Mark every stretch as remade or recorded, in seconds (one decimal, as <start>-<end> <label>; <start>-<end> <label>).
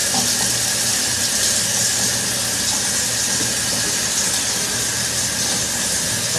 0.0-6.4 recorded